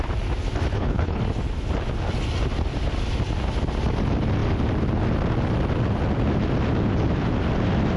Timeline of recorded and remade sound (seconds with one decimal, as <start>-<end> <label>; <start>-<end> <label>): 0.0-0.7 recorded; 0.7-1.2 remade; 1.2-8.0 recorded